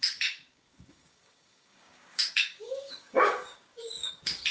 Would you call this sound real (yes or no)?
no